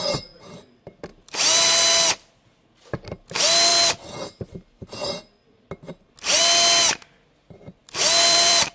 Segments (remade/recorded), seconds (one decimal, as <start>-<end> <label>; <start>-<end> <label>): 0.0-1.1 recorded; 1.1-1.8 remade; 1.8-7.8 recorded; 7.8-8.7 remade